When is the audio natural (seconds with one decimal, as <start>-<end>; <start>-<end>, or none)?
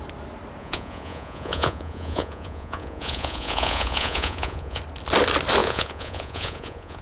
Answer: 0.0-0.6; 4.8-5.6